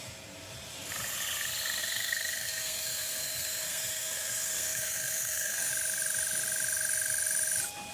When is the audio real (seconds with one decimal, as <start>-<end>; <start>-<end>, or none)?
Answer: 0.0-1.8; 5.7-7.9